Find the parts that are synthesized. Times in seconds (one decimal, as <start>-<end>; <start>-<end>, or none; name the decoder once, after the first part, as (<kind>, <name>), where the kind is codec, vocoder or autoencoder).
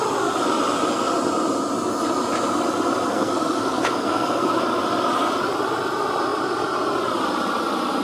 3.1-4.6 (codec, SNAC)